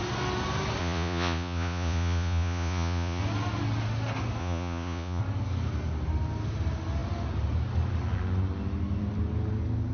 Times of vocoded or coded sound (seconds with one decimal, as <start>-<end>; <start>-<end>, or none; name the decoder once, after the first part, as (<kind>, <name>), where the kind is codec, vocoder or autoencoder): 0.8-3.2 (vocoder, Vocos); 4.4-5.2